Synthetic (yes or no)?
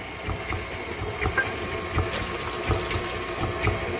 no